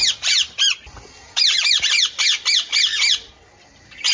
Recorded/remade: recorded